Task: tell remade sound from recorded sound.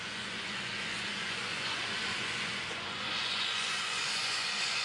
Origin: remade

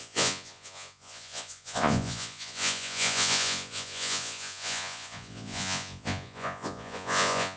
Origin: remade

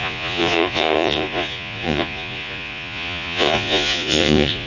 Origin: remade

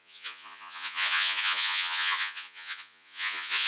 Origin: remade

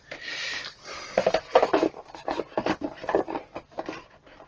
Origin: recorded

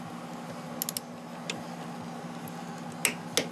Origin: recorded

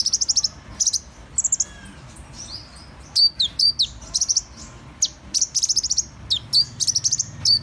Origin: recorded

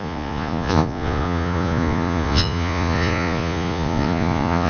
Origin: remade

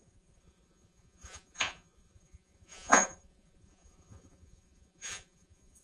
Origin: remade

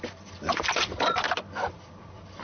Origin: recorded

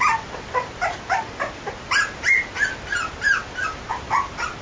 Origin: recorded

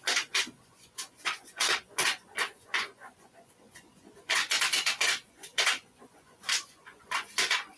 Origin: remade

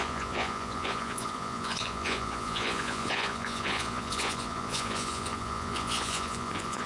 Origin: remade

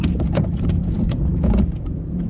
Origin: remade